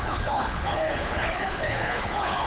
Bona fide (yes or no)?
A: no